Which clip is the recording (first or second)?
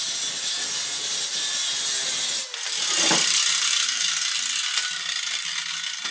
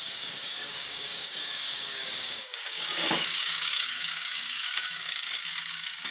first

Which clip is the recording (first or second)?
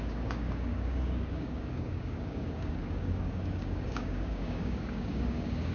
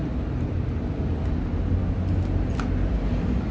second